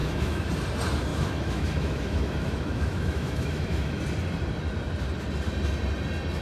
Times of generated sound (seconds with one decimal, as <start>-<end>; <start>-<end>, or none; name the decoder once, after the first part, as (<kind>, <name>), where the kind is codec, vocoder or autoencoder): 0.0-0.5 (autoencoder, DAC-VAE); 1.1-4.0